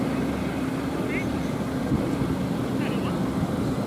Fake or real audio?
real